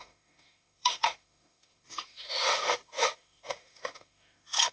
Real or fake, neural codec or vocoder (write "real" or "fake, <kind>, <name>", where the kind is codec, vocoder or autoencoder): fake, autoencoder, DAC-VAE